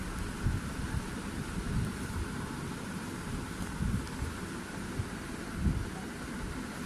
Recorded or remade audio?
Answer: recorded